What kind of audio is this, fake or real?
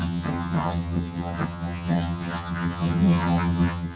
fake